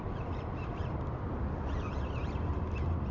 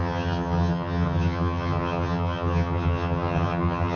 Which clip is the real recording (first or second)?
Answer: first